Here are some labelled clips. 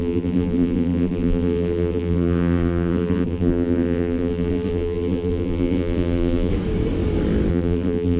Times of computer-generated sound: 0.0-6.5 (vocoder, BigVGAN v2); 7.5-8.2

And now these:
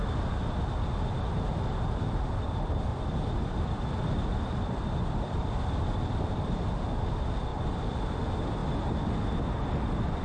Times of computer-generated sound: 2.9-7.1 (vocoder, BigVGAN v2); 7.5-8.2

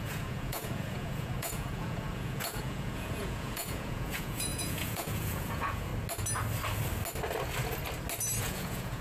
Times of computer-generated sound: 0.0-5.9 (vocoder, Vocos); 8.4-9.0

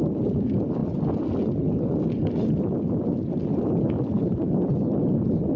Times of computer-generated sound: none